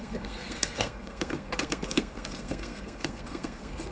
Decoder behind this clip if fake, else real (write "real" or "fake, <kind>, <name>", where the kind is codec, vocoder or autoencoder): fake, codec, SNAC